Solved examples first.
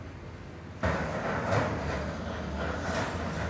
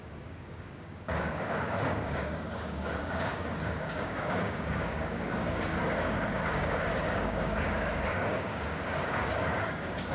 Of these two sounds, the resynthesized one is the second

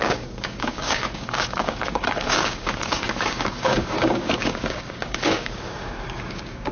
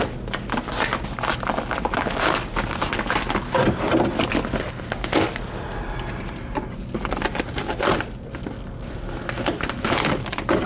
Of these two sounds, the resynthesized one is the first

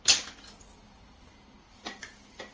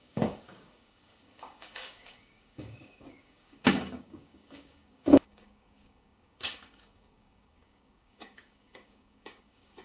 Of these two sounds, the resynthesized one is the second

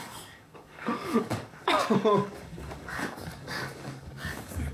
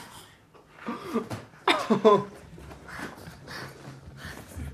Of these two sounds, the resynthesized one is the first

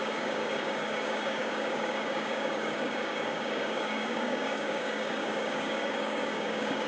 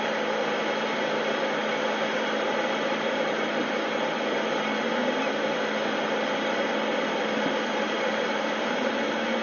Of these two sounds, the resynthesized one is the first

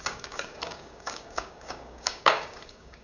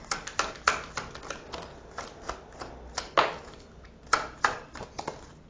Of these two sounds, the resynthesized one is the first